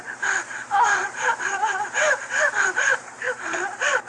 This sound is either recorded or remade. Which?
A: remade